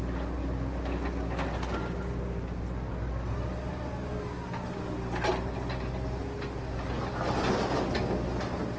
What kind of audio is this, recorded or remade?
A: recorded